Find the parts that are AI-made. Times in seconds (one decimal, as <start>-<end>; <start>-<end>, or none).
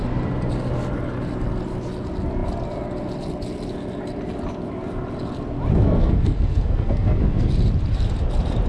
5.7-7.5